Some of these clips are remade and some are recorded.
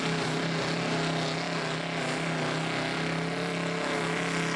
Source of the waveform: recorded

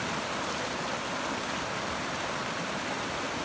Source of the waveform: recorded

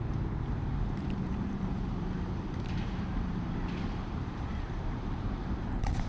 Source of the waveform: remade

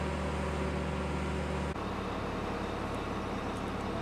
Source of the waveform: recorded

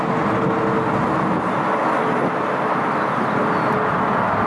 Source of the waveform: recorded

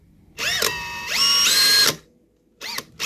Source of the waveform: recorded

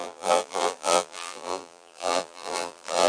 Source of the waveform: remade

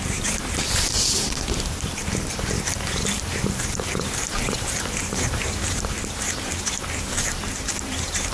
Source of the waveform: remade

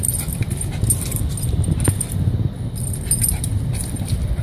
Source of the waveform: recorded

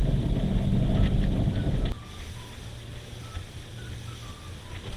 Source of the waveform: recorded